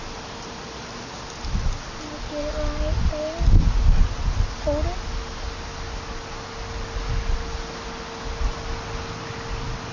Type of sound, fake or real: real